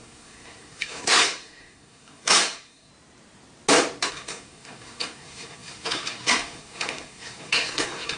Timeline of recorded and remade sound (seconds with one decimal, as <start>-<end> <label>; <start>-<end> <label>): 0.0-2.9 remade; 2.9-4.1 recorded; 4.1-8.2 remade